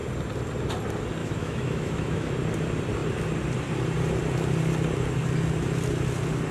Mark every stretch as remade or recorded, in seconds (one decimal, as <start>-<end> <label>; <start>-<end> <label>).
0.0-1.2 recorded; 1.2-2.3 remade; 2.3-6.5 recorded